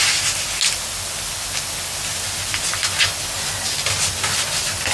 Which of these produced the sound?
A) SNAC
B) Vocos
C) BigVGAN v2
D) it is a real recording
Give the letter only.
D